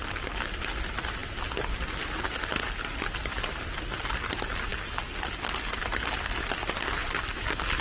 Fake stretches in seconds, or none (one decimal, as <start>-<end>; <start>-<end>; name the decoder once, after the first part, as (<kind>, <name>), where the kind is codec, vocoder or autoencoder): none